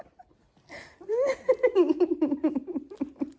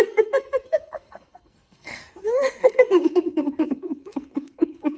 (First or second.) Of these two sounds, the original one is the first